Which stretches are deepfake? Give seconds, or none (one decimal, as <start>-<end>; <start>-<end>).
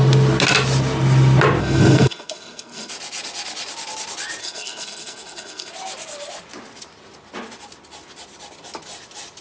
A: 1.6-2.9; 4.4-5.7